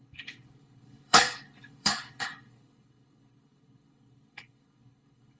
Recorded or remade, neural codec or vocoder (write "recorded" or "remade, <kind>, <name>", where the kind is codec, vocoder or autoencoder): remade, codec, HILCodec